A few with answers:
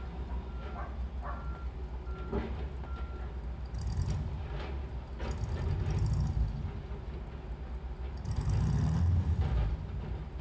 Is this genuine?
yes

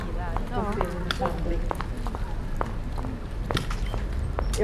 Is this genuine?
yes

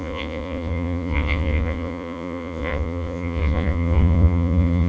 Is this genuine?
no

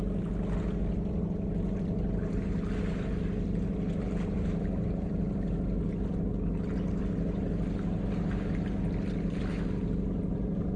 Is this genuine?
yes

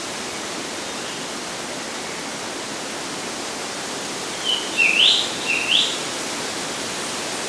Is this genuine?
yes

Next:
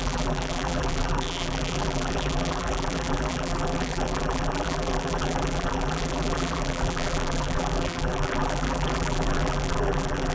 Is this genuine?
no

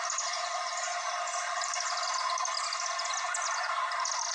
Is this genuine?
yes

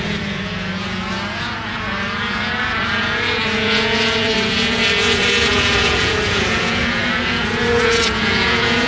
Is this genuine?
no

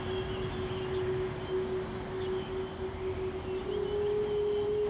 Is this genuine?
yes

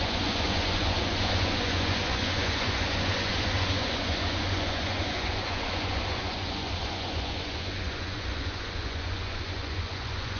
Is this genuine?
no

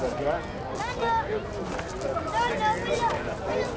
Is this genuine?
yes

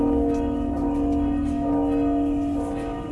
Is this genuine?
yes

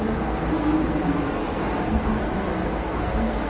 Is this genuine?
no